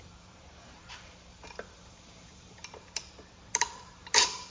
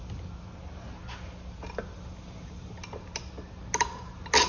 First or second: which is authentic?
second